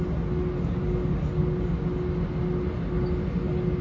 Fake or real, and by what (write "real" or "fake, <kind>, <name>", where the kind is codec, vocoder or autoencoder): real